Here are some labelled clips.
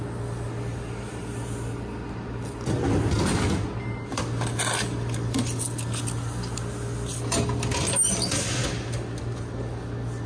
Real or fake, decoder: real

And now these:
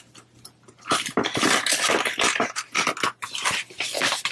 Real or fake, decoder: real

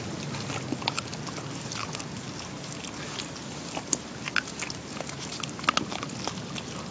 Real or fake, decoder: real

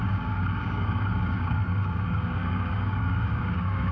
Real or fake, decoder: fake, codec, DAC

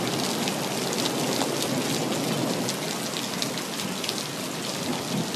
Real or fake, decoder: real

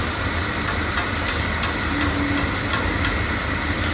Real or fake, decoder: real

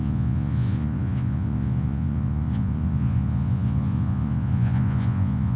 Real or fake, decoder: fake, vocoder, Vocos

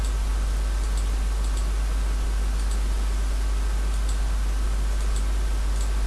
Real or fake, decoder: real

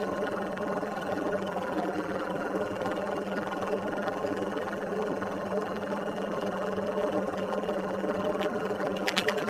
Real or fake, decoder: fake, vocoder, BigVGAN v2